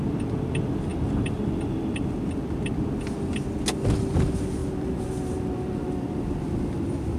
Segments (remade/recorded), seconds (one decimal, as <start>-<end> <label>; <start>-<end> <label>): 0.0-7.2 recorded

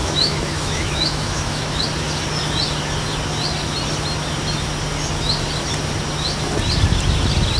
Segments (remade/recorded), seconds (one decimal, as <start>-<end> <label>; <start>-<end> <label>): 0.0-1.8 remade; 1.8-7.6 recorded

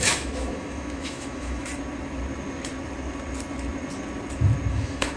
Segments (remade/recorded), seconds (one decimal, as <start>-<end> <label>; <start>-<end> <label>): 0.0-1.7 remade; 1.7-4.7 recorded; 4.7-5.2 remade

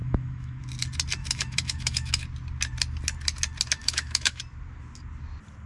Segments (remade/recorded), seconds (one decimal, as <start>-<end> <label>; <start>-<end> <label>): 0.0-0.6 remade; 0.6-1.2 recorded; 1.2-2.2 remade; 2.2-3.8 recorded; 3.8-4.4 remade; 4.4-5.7 recorded

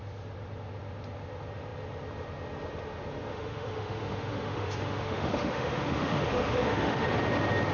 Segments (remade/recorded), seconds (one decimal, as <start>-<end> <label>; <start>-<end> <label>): 0.0-3.3 recorded; 3.3-7.1 remade; 7.1-7.7 recorded